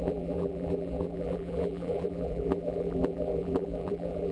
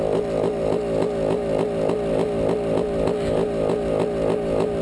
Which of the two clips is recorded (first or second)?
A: second